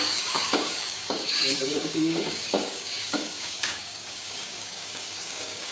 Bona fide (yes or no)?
no